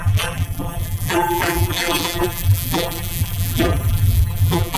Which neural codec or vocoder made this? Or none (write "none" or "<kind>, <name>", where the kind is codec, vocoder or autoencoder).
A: vocoder, BigVGAN v2